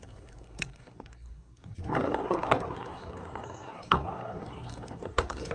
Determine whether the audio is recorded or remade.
remade